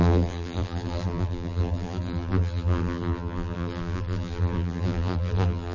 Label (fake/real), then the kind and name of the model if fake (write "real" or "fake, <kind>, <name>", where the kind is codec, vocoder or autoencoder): fake, vocoder, BigVGAN v2